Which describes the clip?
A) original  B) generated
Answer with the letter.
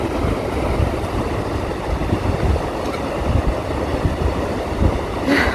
A